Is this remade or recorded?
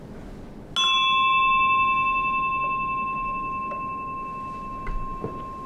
recorded